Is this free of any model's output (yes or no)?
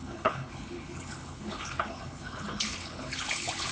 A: no